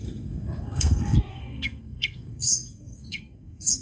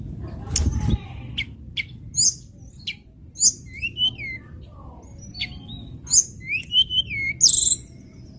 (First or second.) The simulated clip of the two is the first